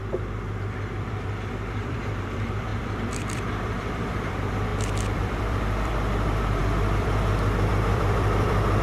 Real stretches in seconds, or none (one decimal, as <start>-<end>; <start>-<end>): none